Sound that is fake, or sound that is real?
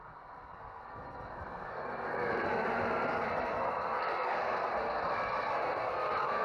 fake